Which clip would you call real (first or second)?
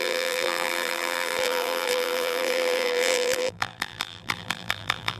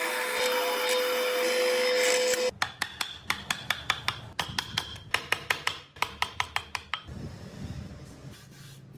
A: second